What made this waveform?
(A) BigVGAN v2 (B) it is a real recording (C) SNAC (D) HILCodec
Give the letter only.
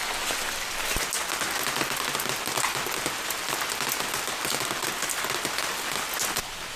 B